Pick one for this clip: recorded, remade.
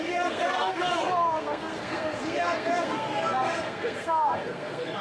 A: remade